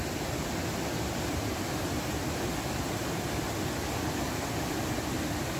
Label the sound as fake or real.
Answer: real